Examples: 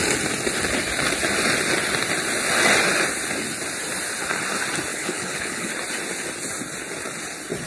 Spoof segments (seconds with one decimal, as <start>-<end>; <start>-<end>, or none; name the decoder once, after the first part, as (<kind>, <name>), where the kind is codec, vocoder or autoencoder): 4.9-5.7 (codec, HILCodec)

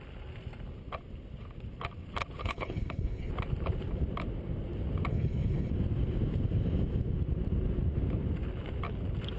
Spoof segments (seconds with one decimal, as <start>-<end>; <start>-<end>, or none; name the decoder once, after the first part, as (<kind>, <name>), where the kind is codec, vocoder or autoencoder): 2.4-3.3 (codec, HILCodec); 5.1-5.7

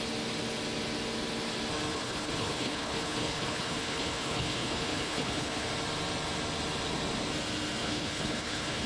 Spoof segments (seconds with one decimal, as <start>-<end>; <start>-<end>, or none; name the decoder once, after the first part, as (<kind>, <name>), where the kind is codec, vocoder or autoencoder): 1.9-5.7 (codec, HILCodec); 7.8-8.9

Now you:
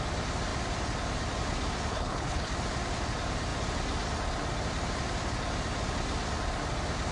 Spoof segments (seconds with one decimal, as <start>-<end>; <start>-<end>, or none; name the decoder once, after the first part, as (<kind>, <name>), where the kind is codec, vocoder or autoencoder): 1.9-2.5 (codec, HILCodec)

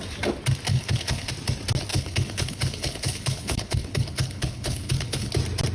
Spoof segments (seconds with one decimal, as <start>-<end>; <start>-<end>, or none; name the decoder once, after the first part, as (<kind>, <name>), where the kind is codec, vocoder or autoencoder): 0.7-1.3 (codec, HILCodec); 1.9-5.3